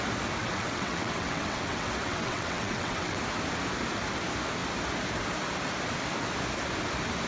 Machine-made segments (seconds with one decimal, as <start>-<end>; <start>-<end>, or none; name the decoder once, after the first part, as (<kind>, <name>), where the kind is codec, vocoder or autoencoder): 0.4-3.2 (vocoder, WaveNeXt)